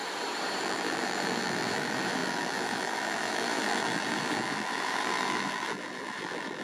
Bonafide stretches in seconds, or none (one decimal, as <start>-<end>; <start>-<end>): 0.0-0.6